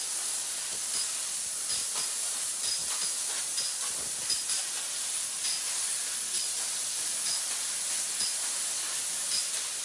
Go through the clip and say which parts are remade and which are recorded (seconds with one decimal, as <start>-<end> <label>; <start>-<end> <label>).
0.0-9.8 remade